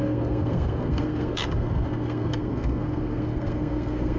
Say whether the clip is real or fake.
fake